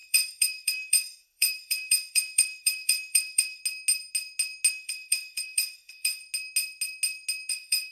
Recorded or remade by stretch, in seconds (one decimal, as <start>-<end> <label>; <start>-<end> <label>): 0.0-3.6 remade; 3.6-4.7 recorded; 4.7-6.2 remade; 6.2-7.5 recorded; 7.5-7.9 remade